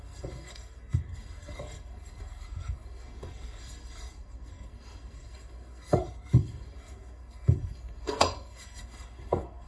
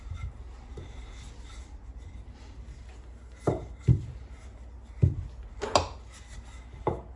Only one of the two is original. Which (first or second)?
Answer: second